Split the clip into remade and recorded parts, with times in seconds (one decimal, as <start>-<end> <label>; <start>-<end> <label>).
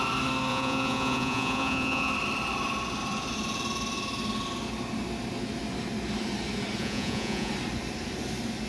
0.0-0.5 recorded; 0.5-2.1 remade; 2.1-6.8 recorded; 6.8-7.5 remade; 7.5-8.7 recorded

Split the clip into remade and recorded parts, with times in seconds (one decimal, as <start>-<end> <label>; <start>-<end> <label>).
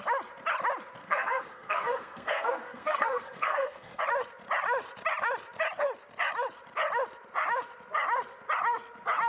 0.0-1.0 recorded; 1.0-4.0 remade; 4.0-9.3 recorded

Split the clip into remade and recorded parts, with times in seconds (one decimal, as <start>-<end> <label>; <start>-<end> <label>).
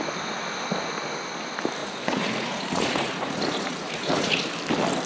0.0-1.8 recorded; 1.8-4.4 remade; 4.4-5.1 recorded